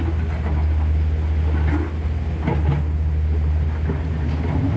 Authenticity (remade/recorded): recorded